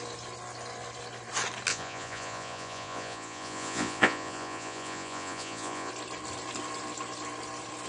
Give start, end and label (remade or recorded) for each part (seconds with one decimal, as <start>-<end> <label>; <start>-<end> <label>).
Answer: 0.0-1.7 recorded; 1.7-5.9 remade; 5.9-7.9 recorded